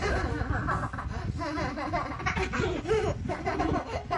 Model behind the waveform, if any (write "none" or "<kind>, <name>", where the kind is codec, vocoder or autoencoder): none